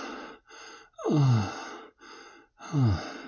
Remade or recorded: recorded